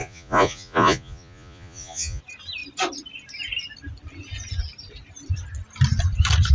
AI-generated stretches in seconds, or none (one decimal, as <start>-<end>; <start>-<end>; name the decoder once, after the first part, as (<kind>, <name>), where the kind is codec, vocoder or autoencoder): 0.0-2.2 (vocoder, Vocos)

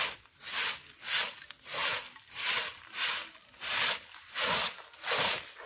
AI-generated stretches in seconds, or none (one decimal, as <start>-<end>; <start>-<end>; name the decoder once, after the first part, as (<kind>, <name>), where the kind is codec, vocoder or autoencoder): none